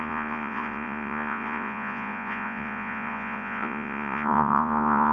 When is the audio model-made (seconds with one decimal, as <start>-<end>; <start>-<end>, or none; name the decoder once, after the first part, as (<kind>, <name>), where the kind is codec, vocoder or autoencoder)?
0.0-5.1 (vocoder, Vocos)